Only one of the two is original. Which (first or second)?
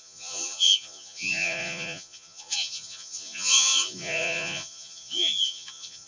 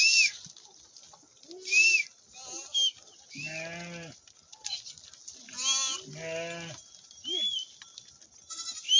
second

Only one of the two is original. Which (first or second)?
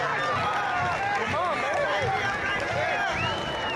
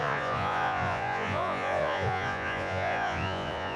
first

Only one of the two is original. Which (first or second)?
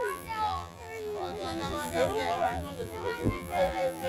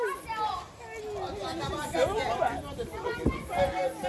second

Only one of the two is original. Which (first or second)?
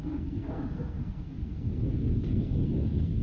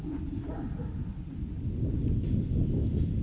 second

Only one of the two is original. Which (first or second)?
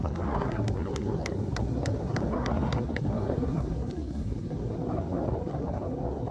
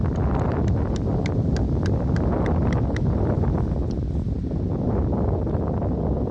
second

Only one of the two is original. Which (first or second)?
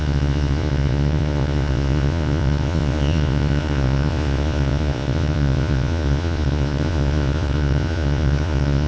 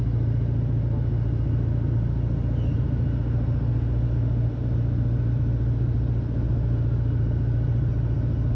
second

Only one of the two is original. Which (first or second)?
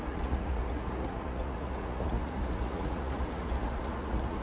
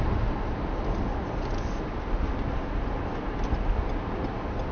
second